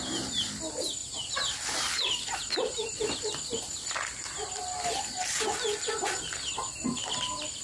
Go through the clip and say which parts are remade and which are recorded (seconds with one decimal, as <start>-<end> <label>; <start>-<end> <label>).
0.0-7.6 recorded